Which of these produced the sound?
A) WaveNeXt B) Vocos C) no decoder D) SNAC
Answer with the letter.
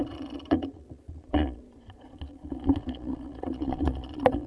B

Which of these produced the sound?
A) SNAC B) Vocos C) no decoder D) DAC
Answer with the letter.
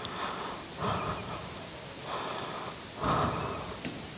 C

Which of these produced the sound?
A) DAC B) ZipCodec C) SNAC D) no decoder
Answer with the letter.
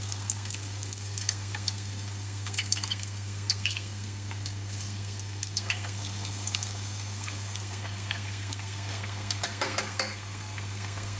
C